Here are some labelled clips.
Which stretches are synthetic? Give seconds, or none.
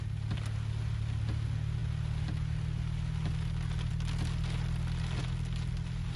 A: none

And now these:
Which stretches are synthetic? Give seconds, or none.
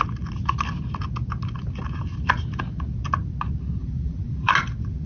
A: 3.8-4.5 (vocoder, BigVGAN v2)